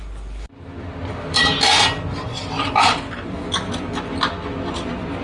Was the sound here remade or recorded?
remade